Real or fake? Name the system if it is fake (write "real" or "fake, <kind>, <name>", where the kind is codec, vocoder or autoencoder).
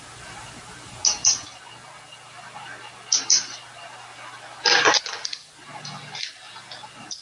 real